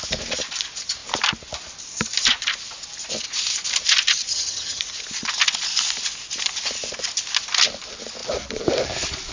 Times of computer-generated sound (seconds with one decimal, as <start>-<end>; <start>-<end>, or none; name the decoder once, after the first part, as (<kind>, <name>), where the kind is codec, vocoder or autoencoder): 4.3-4.8 (vocoder, HiFi-GAN)